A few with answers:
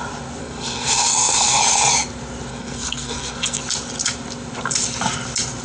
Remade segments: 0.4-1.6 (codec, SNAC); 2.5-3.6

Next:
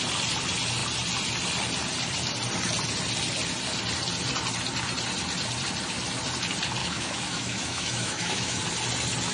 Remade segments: 6.8-8.6 (autoencoder, DAC-VAE)

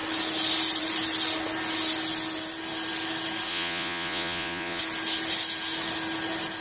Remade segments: 3.5-4.8 (vocoder, Vocos)

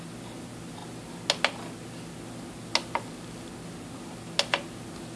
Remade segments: none

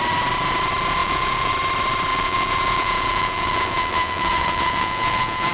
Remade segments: 1.0-1.5 (vocoder, Vocos); 2.1-5.5

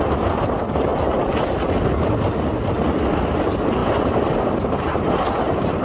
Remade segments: none

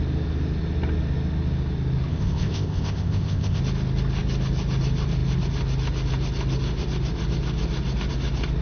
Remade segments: 2.1-3.6 (codec, ZipCodec)